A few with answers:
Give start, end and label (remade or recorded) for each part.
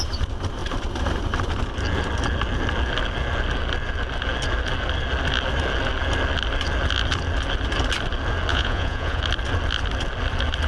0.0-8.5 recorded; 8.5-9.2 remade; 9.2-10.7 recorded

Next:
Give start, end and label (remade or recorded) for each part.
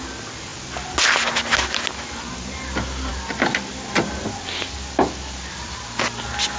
0.0-6.6 recorded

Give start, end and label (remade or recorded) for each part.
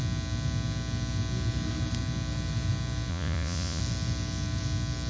0.0-3.1 recorded; 3.1-3.8 remade; 3.8-5.1 recorded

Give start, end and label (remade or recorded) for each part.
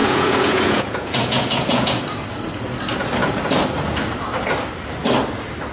0.0-1.9 remade; 1.9-5.7 recorded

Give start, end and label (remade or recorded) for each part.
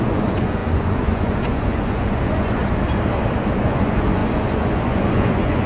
0.0-2.6 remade; 2.6-3.6 recorded; 3.6-5.7 remade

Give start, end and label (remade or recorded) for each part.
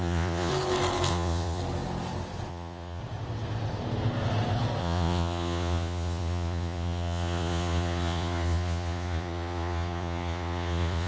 0.0-0.5 remade; 0.5-1.1 recorded; 1.1-1.6 remade; 1.6-2.5 recorded; 2.5-3.0 remade; 3.0-4.8 recorded; 4.8-11.1 remade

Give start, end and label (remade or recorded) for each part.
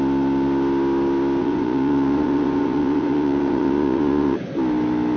0.0-1.4 recorded; 1.4-4.5 remade; 4.5-5.2 recorded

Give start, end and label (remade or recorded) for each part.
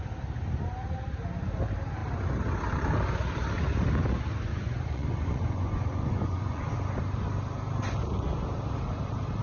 0.0-4.5 recorded; 4.5-6.7 remade; 6.7-9.4 recorded